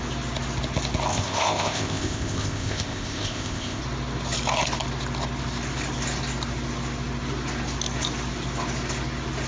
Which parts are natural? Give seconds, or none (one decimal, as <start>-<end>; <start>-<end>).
0.0-1.1; 3.8-9.5